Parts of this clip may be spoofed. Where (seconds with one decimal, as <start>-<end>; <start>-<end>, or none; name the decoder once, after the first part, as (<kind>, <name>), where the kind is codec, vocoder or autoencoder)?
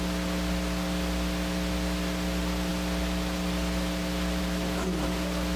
none